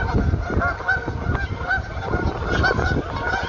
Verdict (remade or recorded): recorded